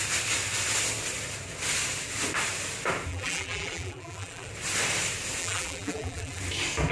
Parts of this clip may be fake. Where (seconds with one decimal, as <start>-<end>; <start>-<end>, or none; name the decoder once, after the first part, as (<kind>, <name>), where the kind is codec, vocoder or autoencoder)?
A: 3.1-4.5 (vocoder, BigVGAN v2); 5.4-6.4